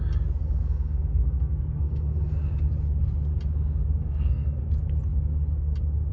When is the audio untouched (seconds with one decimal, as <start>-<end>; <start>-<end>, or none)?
0.0-0.4; 2.3-4.0; 4.6-6.1

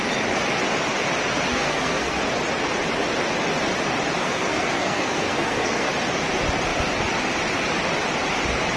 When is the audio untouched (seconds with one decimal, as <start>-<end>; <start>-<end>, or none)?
0.0-1.5; 2.2-4.2; 5.9-8.8